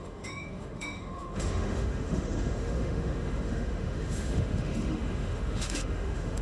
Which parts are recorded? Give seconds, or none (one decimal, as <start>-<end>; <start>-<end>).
none